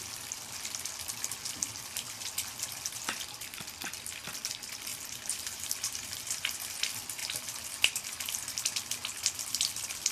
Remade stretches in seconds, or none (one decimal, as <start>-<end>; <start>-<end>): 4.9-6.8

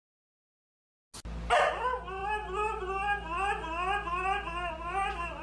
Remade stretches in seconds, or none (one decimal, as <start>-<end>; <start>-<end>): 0.0-0.9; 1.5-2.2; 4.7-5.4